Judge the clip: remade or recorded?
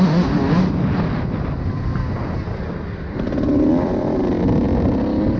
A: recorded